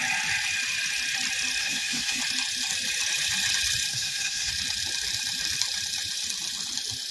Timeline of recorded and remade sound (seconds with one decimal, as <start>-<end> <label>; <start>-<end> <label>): 0.0-1.6 recorded; 1.6-2.2 remade; 2.2-3.9 recorded; 3.9-4.5 remade; 4.5-7.1 recorded